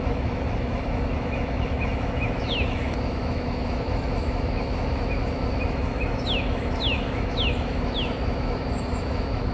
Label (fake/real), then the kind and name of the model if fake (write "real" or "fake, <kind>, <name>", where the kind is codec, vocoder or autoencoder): fake, autoencoder, DAC-VAE